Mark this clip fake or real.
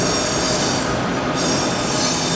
real